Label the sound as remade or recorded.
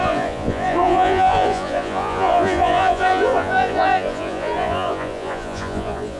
remade